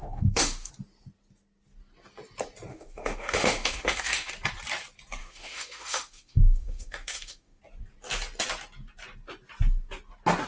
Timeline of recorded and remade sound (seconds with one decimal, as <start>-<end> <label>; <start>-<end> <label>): 0.0-0.7 remade; 0.7-2.7 recorded; 2.7-4.3 remade; 4.3-5.2 recorded; 5.2-7.6 remade; 7.6-10.5 recorded

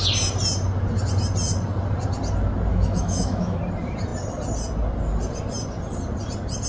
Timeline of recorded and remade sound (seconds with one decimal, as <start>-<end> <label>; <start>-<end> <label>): 0.0-2.7 recorded; 2.7-3.6 remade; 3.6-6.7 recorded